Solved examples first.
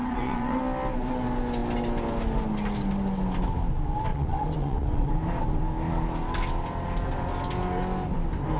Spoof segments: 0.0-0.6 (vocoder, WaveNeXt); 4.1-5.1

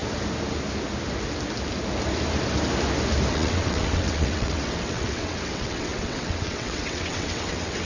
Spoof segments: 3.3-7.8 (vocoder, WaveNeXt)

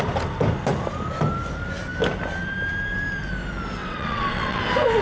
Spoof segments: 3.8-4.6 (vocoder, WaveNeXt)